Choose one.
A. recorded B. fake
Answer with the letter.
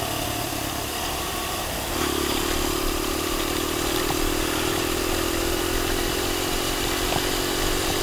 B